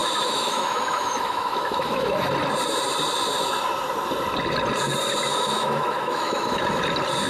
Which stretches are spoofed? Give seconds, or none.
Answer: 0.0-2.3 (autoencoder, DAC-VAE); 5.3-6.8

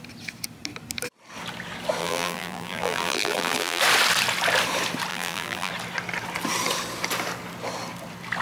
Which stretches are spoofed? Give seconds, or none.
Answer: 2.0-3.8 (vocoder, BigVGAN v2); 5.1-5.7

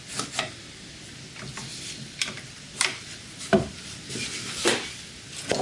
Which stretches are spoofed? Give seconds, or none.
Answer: 1.7-4.3 (vocoder, BigVGAN v2)

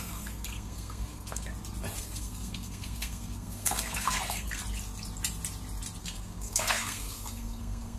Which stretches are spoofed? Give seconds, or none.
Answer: 0.0-1.5 (codec, SNAC); 2.0-4.6; 6.0-8.0

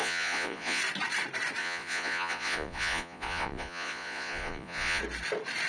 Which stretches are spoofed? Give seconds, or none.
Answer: 0.0-0.8 (vocoder, Vocos); 1.6-5.0